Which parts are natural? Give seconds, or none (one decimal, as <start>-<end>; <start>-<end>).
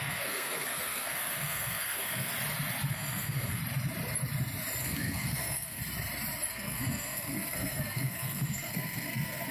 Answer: 2.3-2.9; 3.6-4.8; 5.8-6.5